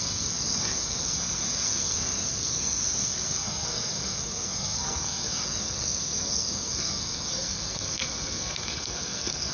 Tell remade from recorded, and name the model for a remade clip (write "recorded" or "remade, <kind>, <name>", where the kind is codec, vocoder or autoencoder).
remade, codec, SNAC